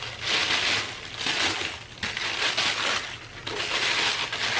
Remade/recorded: recorded